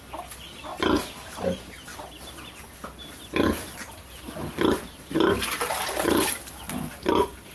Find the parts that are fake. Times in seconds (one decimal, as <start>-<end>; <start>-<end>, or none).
none